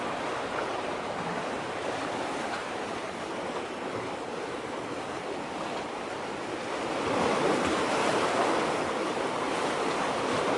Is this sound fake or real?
real